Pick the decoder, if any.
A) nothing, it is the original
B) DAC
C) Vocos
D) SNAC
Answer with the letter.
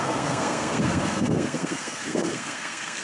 D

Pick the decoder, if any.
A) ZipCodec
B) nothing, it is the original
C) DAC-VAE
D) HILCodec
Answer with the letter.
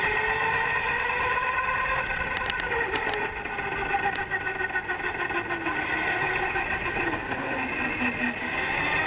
B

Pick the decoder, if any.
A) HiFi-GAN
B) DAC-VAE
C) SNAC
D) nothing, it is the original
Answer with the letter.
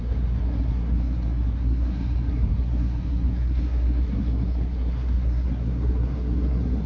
C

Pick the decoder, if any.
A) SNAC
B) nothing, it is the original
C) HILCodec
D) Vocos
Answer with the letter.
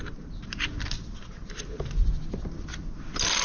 B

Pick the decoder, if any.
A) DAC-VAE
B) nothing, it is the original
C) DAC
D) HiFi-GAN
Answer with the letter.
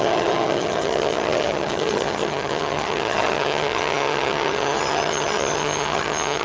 D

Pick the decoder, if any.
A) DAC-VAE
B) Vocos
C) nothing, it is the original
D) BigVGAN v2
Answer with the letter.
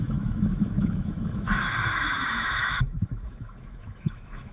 A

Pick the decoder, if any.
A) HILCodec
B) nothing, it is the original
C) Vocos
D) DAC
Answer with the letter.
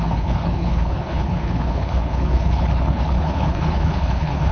A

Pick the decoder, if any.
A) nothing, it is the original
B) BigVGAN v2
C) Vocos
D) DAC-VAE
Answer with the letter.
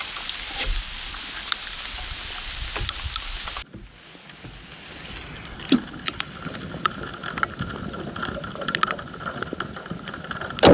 A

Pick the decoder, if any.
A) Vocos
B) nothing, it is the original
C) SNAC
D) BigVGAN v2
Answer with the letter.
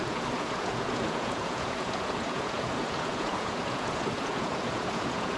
A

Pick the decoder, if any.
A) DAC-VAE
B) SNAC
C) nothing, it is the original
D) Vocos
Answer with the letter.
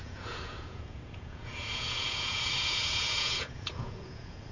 D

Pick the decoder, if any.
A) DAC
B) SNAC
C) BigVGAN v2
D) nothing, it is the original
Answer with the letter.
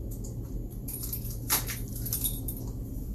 D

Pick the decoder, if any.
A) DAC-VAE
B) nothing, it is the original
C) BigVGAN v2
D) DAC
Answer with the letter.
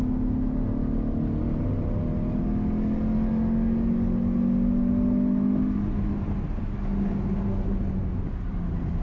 B